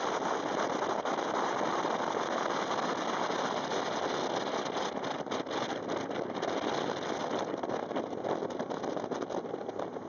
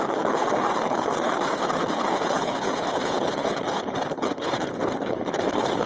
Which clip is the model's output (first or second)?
second